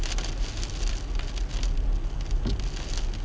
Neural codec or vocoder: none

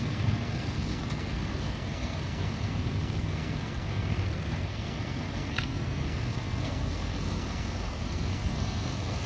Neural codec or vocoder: codec, SNAC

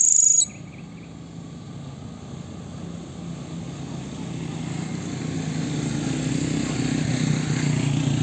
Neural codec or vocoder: none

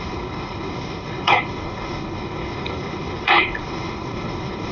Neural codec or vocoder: codec, HILCodec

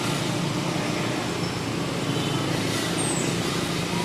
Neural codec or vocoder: none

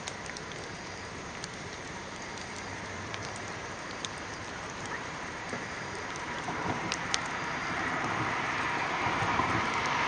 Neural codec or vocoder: vocoder, BigVGAN v2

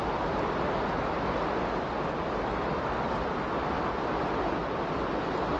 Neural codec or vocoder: none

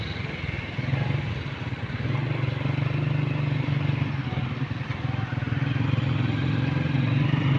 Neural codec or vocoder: none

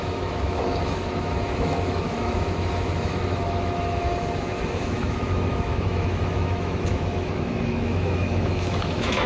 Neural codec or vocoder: autoencoder, DAC-VAE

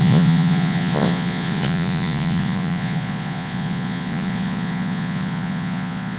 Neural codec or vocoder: vocoder, Vocos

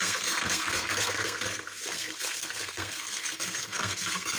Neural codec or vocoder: codec, SNAC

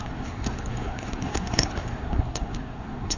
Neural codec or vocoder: codec, SNAC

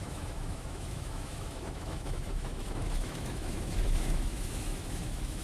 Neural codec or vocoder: autoencoder, DAC-VAE